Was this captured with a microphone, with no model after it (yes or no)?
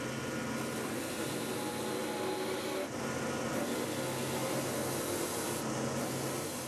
yes